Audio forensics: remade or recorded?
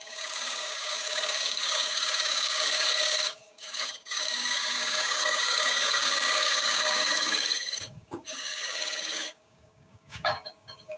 remade